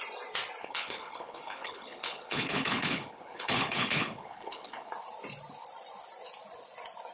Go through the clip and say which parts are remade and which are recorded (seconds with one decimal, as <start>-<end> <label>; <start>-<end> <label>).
0.0-0.6 recorded; 0.6-4.9 remade; 4.9-7.1 recorded